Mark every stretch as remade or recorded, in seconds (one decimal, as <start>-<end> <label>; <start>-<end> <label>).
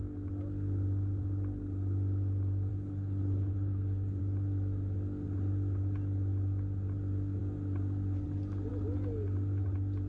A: 0.0-2.7 recorded; 2.7-4.2 remade; 4.2-10.1 recorded